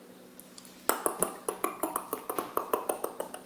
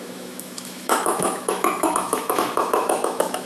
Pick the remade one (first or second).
second